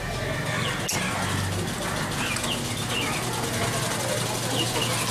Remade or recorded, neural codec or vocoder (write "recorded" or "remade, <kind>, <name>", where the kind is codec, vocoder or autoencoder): recorded